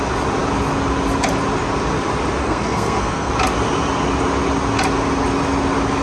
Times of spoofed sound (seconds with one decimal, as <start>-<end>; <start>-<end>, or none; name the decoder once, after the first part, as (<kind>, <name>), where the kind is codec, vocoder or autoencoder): 2.4-3.3 (codec, SNAC)